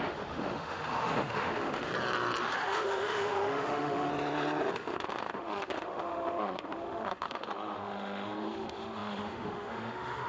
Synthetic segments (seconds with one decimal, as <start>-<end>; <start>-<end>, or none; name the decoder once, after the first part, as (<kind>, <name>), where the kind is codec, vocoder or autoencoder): 0.0-1.9 (autoencoder, DAC-VAE); 2.4-4.1; 4.7-10.3